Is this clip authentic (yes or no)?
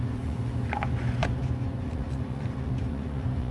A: no